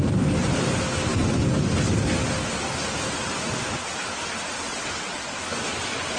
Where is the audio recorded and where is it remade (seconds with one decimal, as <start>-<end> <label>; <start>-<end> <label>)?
0.0-4.7 recorded; 4.7-5.4 remade; 5.4-6.2 recorded